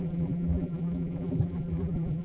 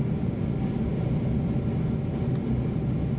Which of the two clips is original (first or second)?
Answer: second